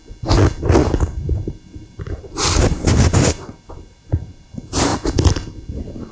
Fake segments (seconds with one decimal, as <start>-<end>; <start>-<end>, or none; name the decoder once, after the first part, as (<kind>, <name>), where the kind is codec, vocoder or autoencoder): 0.8-4.5 (vocoder, BigVGAN v2)